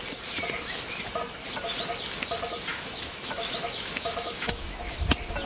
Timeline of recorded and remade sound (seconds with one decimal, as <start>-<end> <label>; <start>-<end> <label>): 0.0-2.7 recorded; 2.7-4.9 remade; 4.9-5.5 recorded